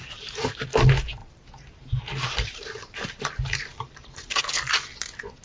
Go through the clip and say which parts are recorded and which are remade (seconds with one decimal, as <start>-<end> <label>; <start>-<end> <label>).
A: 0.0-0.6 remade; 0.6-1.2 recorded; 1.2-4.4 remade; 4.4-5.4 recorded